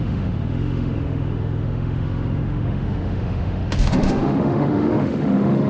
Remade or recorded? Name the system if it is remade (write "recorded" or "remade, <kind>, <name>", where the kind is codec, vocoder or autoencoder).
remade, autoencoder, DAC-VAE